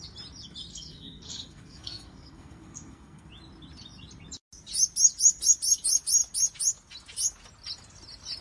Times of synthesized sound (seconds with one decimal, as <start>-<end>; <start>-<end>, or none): 0.7-3.3